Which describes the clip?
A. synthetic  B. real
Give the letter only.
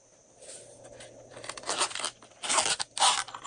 B